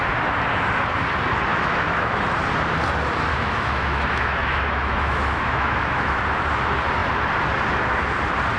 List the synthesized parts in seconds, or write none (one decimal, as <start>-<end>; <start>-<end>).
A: 1.5-2.2; 3.3-6.2